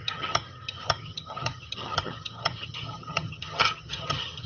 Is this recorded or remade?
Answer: remade